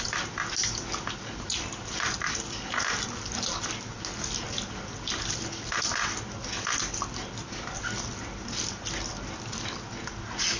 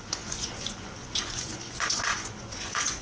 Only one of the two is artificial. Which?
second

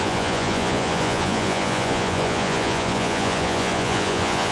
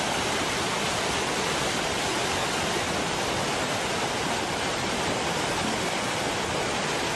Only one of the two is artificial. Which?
first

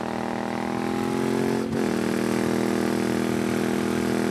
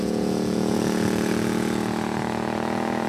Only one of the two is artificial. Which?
second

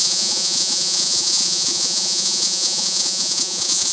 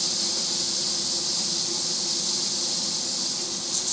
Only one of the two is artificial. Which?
first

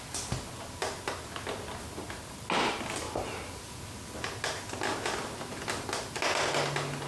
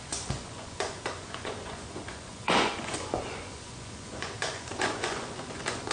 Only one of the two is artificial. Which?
second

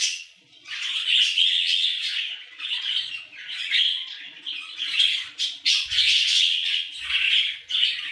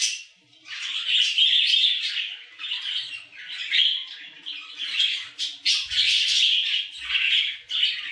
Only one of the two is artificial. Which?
first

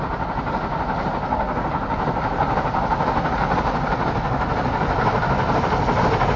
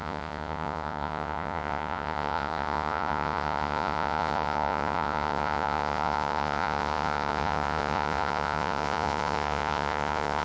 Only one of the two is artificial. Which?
second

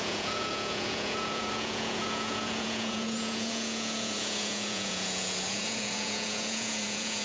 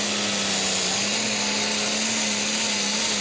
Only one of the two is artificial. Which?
first